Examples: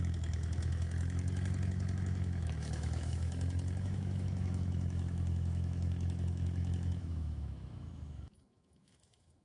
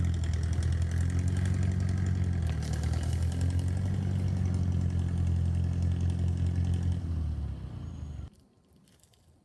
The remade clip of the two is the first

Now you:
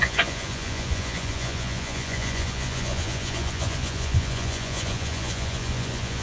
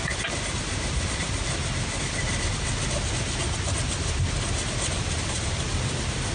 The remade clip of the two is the first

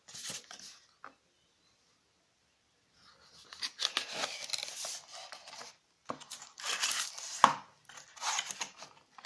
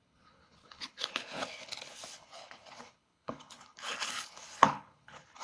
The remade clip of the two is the second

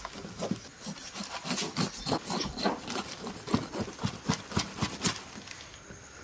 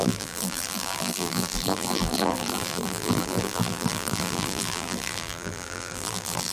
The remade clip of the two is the second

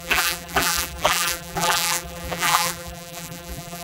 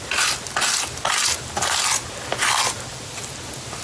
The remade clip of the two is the first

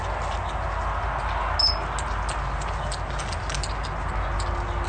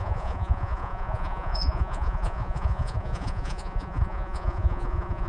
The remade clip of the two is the second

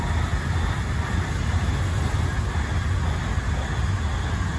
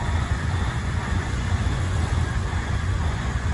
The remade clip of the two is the second